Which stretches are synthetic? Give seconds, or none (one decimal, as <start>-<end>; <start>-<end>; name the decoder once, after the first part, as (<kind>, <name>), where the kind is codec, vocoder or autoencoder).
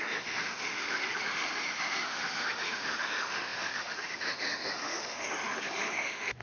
0.0-6.4 (autoencoder, DAC-VAE)